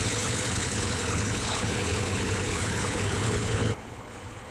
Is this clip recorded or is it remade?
remade